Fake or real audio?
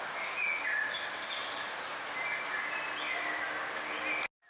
real